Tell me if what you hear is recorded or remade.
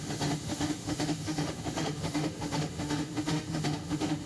remade